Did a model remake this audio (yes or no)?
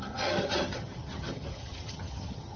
yes